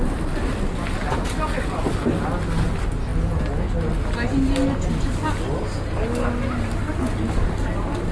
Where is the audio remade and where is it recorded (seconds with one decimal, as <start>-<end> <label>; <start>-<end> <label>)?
0.0-8.1 recorded